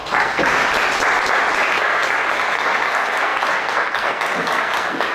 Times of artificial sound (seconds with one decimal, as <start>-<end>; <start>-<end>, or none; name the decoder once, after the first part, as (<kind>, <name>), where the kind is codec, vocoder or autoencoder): 0.0-0.6 (codec, SNAC); 1.7-5.1

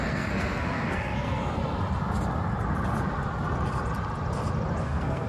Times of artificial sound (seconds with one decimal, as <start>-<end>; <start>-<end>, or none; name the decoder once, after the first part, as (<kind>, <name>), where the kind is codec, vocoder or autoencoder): 0.0-1.6 (codec, SNAC); 4.8-5.3

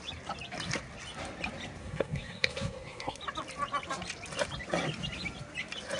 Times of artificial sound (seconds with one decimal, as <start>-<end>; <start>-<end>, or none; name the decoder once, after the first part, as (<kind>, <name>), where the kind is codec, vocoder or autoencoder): 1.8-3.2 (codec, SNAC)

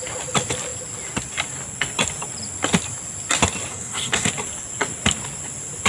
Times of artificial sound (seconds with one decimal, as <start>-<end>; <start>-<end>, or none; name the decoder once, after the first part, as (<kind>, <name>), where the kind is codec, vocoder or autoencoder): 3.7-4.3 (codec, SNAC)

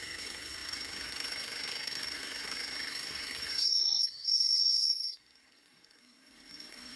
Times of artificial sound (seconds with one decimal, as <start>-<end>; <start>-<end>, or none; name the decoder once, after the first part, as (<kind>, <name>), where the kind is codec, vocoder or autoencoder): 0.0-7.0 (codec, SNAC)

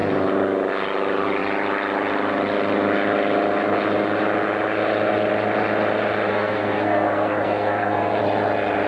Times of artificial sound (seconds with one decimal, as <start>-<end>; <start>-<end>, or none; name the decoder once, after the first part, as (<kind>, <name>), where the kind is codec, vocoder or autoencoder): 6.3-8.2 (codec, SNAC)